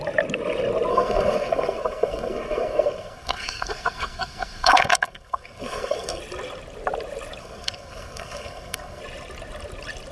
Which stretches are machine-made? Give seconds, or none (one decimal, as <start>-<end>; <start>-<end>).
0.9-6.2; 7.4-9.0

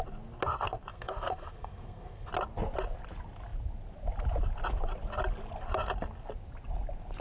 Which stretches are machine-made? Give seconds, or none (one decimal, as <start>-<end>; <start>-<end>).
0.9-2.3

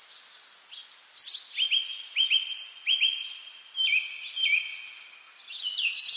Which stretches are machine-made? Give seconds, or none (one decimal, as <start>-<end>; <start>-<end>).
none

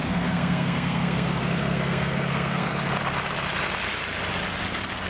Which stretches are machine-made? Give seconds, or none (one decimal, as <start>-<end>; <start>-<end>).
0.0-2.7